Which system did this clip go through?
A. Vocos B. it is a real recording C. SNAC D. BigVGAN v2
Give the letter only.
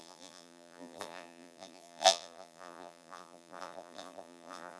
D